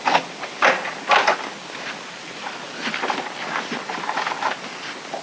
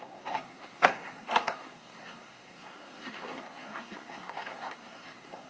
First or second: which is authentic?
first